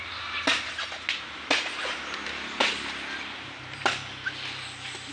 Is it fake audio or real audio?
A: real